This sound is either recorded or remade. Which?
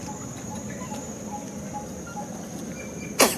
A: recorded